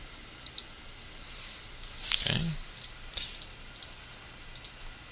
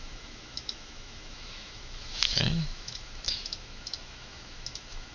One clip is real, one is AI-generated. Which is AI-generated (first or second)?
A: second